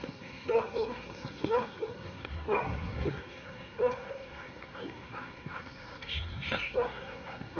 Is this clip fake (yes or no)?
yes